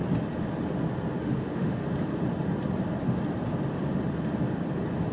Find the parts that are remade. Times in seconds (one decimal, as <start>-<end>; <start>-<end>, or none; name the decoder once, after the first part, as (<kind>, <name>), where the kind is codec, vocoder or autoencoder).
1.2-1.8 (autoencoder, DAC-VAE)